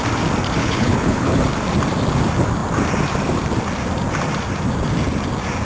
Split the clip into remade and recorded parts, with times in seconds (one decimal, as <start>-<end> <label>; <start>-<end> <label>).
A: 0.0-0.6 recorded; 0.6-1.4 remade; 1.4-5.6 recorded